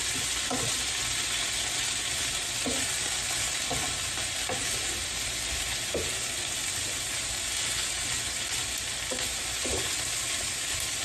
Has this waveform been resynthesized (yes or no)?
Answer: no